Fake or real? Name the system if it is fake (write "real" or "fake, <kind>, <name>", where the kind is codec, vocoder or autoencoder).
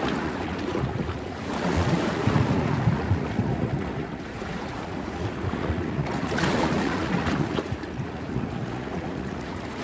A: fake, vocoder, Vocos